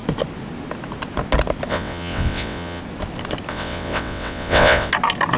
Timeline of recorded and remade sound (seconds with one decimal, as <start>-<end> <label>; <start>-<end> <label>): 0.0-1.7 recorded; 1.7-2.8 remade; 2.8-3.5 recorded; 3.5-4.9 remade; 4.9-5.4 recorded